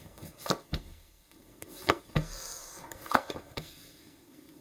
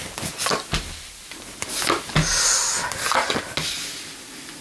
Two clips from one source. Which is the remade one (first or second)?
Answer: first